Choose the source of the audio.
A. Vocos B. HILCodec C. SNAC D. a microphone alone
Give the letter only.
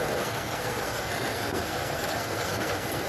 C